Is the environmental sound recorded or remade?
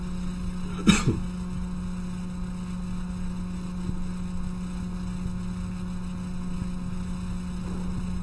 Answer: recorded